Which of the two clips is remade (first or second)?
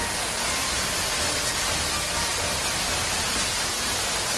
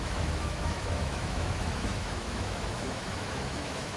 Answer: second